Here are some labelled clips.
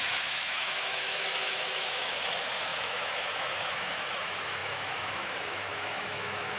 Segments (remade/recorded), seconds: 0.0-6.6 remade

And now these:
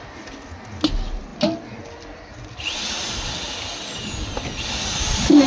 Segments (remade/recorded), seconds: 0.0-5.5 recorded

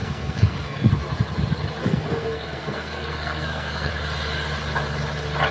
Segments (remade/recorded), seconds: 0.0-0.9 remade; 0.9-1.8 recorded; 1.8-3.9 remade; 3.9-5.5 recorded

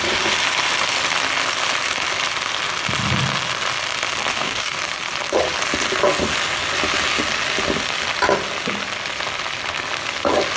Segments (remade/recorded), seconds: 0.0-4.3 recorded; 4.3-4.8 remade; 4.8-10.6 recorded

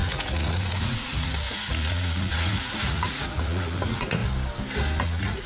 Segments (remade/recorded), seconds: 0.0-4.2 remade; 4.2-5.0 recorded; 5.0-5.5 remade

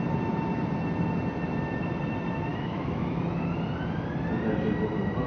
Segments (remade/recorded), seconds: 0.0-2.5 recorded; 2.5-3.2 remade; 3.2-5.3 recorded